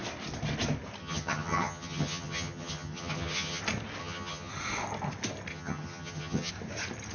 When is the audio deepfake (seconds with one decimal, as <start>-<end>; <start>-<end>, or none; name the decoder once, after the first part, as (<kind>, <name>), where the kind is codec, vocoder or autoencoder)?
1.0-3.6 (vocoder, HiFi-GAN); 4.0-4.5; 5.5-6.5